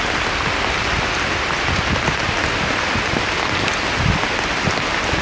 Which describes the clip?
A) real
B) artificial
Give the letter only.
A